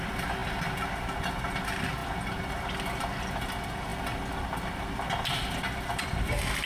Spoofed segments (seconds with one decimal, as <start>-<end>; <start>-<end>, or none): none